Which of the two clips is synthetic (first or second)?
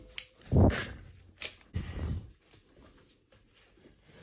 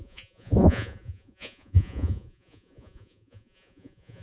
second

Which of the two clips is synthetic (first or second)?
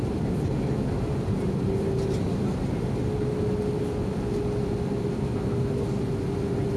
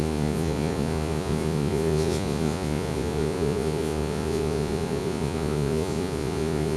second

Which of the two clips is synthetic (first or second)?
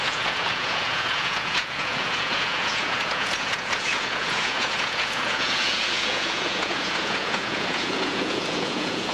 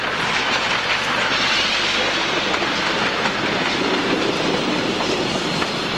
first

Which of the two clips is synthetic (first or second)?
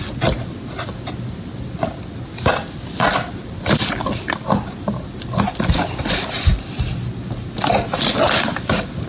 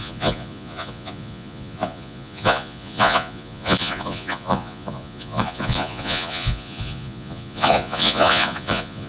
second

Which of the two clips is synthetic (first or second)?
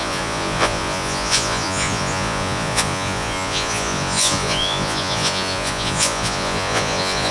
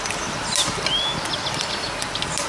first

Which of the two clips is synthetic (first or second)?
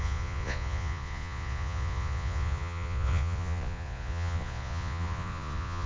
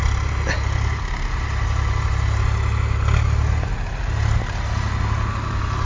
first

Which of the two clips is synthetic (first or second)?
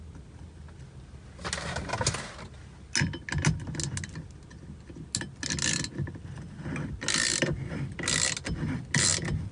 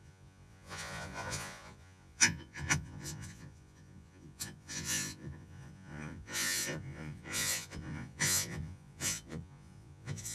second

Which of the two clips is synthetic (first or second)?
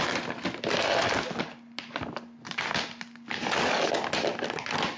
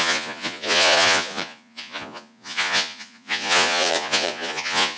second